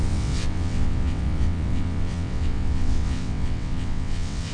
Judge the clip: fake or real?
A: fake